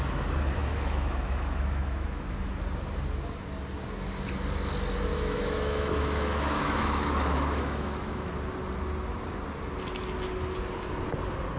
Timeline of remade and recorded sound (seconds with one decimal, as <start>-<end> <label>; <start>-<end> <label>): 0.0-0.6 recorded; 0.6-2.5 remade; 2.5-5.1 recorded; 5.1-8.3 remade; 8.3-11.6 recorded